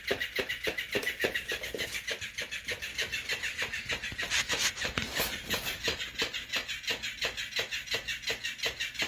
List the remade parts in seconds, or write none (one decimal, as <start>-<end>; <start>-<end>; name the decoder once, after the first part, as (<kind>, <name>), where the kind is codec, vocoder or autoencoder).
none